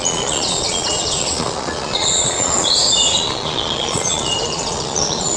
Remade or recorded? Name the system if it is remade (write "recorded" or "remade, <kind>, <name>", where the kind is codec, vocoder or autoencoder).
remade, vocoder, Vocos